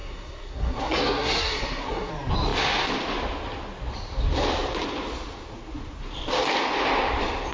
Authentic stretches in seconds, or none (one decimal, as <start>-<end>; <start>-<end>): 2.1-7.5